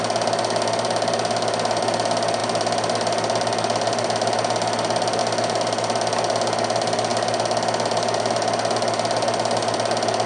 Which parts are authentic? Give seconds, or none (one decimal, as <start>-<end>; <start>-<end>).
0.0-10.3

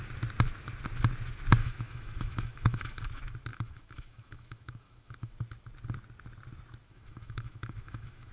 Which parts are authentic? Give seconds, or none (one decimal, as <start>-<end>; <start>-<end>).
0.0-1.6; 3.1-3.5; 5.3-6.8

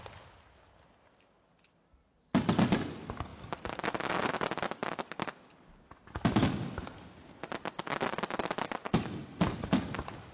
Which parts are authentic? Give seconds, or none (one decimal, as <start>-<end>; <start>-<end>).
0.0-3.3; 4.3-4.8; 5.7-6.4; 7.8-10.3

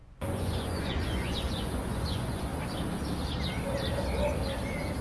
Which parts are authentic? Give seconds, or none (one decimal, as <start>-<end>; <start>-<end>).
2.5-5.0

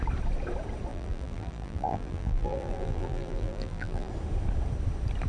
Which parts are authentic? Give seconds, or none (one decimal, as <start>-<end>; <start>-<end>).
0.0-0.9; 4.1-5.3

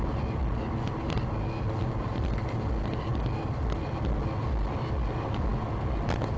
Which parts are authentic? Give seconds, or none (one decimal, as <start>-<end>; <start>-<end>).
0.0-6.4

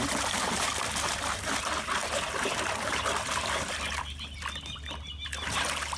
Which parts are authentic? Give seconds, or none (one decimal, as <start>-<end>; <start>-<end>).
0.0-6.0

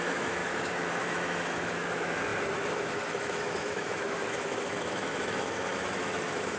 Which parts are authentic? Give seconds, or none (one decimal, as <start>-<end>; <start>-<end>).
none